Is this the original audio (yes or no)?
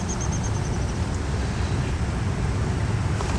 yes